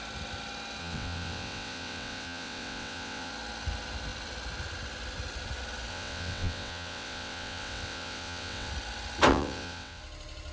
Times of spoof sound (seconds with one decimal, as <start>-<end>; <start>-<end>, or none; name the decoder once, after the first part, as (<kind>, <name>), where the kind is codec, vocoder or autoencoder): 0.8-3.3 (vocoder, WaveNeXt); 5.9-8.7; 9.3-10.0